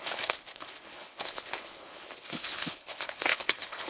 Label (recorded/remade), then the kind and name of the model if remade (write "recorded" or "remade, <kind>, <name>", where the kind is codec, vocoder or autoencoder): remade, codec, HILCodec